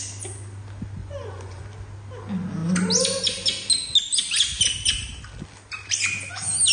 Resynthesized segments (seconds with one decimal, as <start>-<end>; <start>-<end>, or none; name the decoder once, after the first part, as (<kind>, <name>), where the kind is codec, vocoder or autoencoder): 1.0-1.6 (vocoder, Vocos)